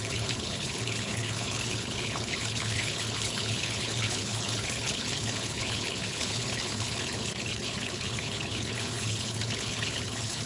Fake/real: fake